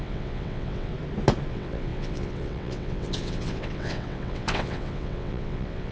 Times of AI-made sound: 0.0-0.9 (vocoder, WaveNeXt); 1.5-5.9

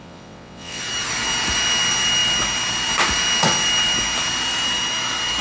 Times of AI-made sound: 0.0-0.8 (vocoder, WaveNeXt)

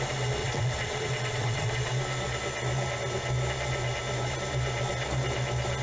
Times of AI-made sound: 0.4-1.7 (vocoder, WaveNeXt)

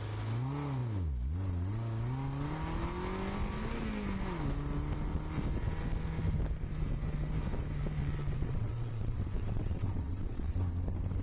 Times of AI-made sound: 8.0-10.5 (vocoder, WaveNeXt)

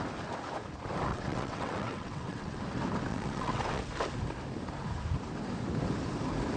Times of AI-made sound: 1.1-2.6 (vocoder, WaveNeXt); 3.1-3.8